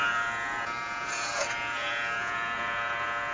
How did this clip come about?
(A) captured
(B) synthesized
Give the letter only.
B